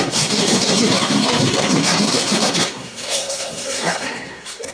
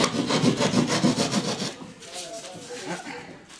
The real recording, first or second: second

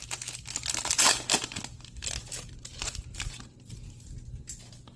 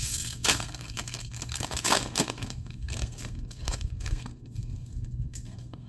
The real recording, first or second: first